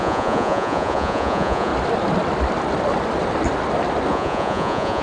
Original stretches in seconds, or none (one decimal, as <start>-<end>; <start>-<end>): 1.7-4.1